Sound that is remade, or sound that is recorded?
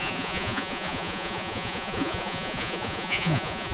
remade